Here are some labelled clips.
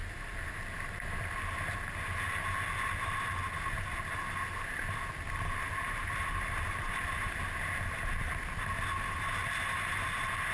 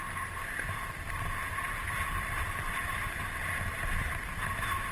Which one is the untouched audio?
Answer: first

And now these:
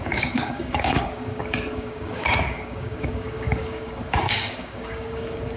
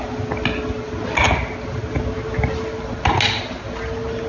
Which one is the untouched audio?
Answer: second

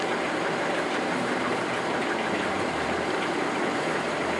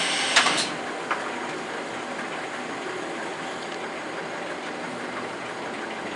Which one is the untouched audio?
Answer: second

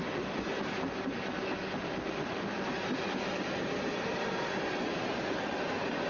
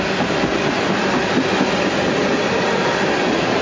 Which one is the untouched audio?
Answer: first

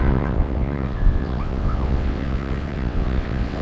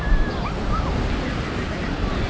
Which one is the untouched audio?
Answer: second